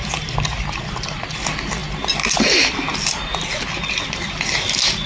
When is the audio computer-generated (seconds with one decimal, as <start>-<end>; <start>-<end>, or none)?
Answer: none

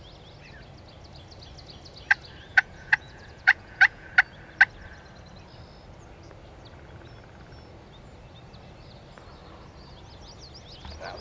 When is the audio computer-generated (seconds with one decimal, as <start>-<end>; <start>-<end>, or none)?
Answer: 2.5-4.1